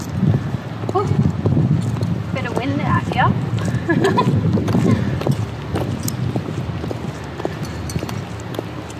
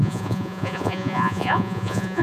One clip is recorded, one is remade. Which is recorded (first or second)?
first